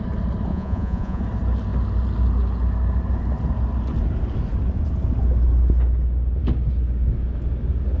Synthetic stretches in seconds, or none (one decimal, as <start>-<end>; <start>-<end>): 0.5-1.2